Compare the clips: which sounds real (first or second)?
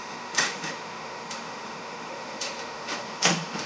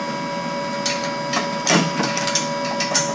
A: second